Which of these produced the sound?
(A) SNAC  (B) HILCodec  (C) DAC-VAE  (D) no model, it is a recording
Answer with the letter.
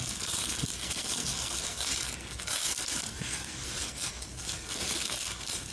A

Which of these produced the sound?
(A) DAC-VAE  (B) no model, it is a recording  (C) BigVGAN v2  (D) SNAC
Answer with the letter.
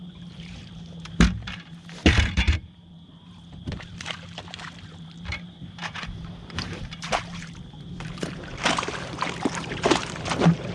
C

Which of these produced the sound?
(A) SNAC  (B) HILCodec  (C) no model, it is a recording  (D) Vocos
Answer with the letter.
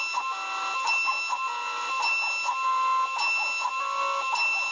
C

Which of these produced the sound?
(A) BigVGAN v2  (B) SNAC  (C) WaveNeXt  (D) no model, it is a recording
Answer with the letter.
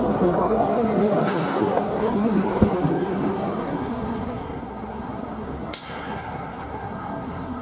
B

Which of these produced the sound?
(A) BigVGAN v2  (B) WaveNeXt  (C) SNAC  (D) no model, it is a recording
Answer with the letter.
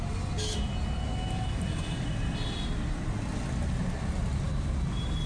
D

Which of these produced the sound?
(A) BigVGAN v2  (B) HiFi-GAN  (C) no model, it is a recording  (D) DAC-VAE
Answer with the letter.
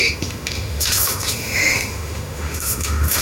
D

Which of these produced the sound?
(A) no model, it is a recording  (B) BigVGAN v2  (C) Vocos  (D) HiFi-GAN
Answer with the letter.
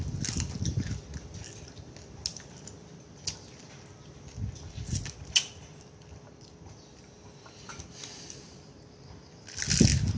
A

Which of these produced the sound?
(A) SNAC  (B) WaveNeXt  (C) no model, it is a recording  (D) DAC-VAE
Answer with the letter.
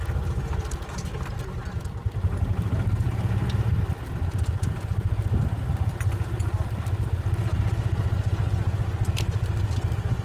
C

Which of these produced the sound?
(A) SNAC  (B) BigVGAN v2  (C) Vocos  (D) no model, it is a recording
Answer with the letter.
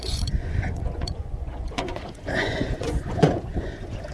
C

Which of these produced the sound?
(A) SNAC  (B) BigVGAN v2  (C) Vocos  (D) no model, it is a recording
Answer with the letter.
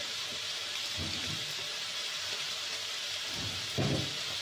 B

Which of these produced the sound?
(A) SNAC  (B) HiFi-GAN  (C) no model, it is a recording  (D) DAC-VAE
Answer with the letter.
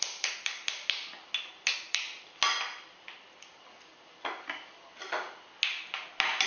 C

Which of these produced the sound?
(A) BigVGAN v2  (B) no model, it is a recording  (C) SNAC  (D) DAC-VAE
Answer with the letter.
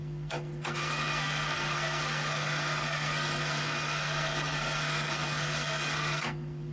C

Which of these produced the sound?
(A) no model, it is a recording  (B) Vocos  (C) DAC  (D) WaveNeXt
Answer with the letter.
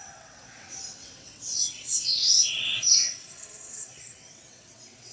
D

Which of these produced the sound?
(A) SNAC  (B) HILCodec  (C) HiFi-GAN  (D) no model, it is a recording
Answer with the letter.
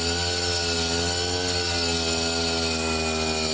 D